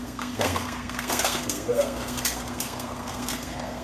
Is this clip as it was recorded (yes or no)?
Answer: no